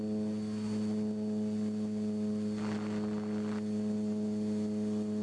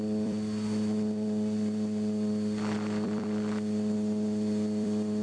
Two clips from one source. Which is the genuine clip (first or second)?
first